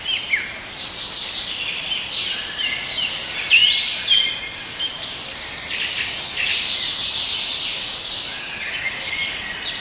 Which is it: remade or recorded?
recorded